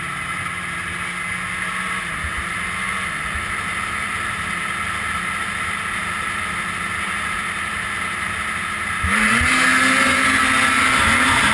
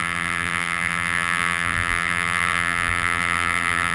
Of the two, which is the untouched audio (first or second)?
first